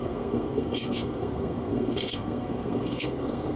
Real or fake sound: fake